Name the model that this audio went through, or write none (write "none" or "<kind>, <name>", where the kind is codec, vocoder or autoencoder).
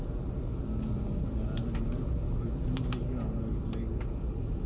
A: none